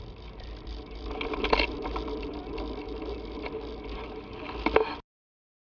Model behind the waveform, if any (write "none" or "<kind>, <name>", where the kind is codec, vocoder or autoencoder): none